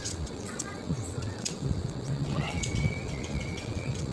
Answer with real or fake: fake